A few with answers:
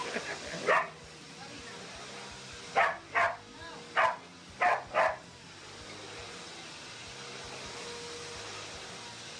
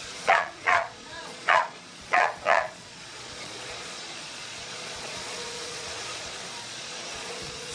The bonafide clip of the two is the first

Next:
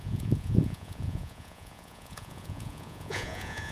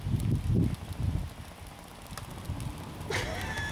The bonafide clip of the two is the second